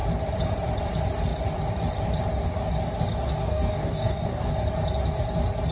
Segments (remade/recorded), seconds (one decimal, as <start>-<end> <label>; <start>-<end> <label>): 0.0-3.4 recorded; 3.4-4.5 remade; 4.5-5.7 recorded